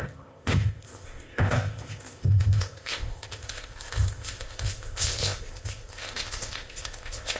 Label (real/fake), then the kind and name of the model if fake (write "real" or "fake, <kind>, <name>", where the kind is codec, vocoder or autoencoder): fake, codec, ZipCodec